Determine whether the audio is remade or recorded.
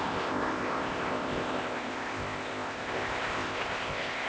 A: remade